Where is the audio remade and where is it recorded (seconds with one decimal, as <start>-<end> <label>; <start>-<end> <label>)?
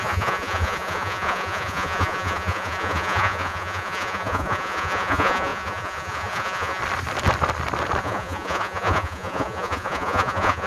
0.0-6.8 remade; 6.8-8.0 recorded; 8.0-10.7 remade